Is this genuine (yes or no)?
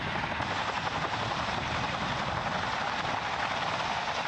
yes